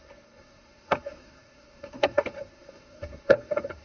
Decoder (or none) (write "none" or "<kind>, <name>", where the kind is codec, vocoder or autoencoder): codec, SNAC